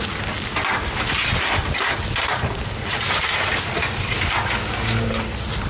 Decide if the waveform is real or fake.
real